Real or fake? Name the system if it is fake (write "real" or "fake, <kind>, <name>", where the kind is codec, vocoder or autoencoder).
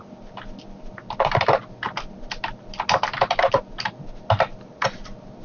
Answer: real